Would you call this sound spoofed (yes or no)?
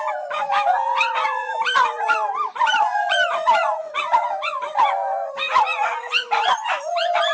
yes